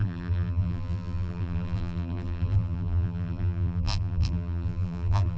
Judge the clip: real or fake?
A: fake